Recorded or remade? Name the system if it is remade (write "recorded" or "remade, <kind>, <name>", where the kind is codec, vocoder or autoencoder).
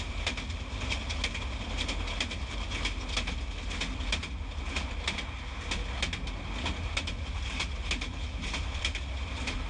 recorded